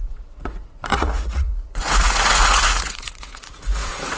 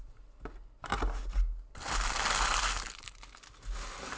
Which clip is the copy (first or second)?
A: first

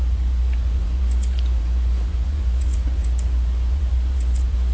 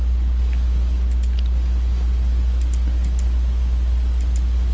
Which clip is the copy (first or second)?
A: first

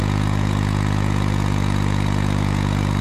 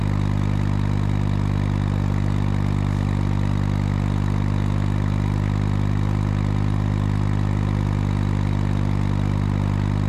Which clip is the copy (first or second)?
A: first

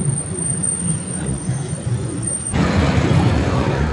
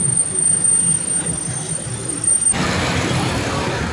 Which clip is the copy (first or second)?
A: first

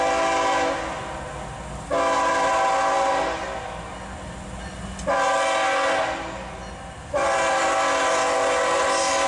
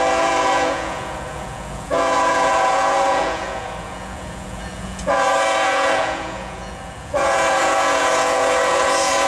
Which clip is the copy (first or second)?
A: second